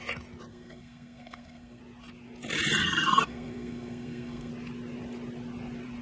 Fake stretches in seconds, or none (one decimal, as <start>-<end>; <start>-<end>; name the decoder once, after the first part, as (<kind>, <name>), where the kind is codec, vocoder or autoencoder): 0.5-1.8 (codec, SNAC); 2.8-4.5